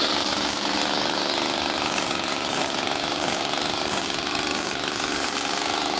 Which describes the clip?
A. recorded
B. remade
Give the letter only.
B